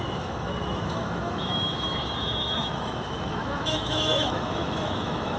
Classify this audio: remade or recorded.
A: remade